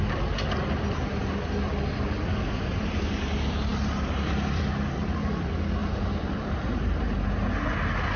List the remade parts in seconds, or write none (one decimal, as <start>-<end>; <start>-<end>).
5.8-7.3